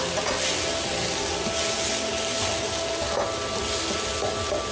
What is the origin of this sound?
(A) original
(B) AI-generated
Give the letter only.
A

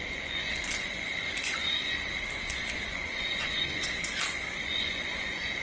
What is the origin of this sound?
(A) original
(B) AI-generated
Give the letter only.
B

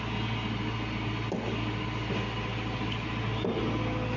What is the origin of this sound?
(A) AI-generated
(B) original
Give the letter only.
B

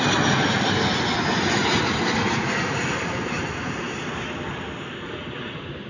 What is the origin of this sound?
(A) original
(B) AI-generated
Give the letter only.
A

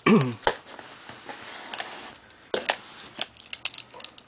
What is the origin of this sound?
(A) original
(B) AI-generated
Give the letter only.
A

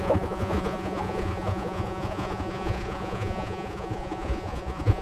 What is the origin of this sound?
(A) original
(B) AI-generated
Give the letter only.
B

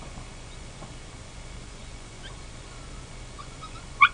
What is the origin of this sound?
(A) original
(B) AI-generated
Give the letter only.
B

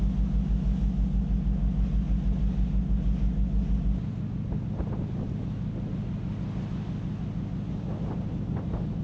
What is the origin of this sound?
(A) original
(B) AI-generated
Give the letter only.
A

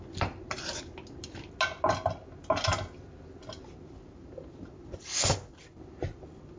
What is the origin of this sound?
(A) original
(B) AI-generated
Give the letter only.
A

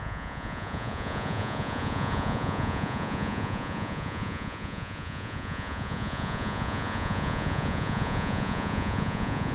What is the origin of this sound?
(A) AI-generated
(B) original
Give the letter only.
A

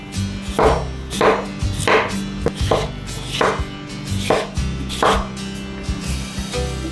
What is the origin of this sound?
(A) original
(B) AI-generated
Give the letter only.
A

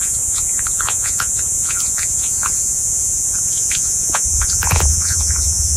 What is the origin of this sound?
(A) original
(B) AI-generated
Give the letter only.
B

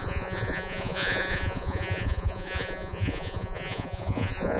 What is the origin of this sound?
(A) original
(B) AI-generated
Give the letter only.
B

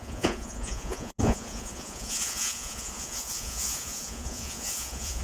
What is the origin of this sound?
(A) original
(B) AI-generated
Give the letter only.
B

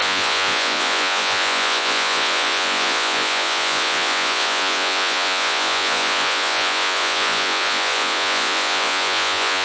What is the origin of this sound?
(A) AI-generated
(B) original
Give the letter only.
A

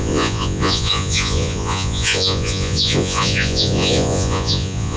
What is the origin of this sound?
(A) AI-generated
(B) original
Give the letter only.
A